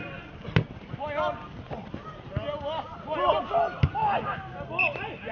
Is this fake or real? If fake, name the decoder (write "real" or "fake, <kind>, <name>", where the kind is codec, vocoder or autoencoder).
real